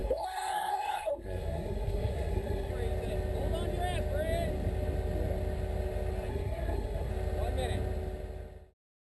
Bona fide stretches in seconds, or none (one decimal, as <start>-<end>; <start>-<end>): 2.7-6.3; 7.1-9.2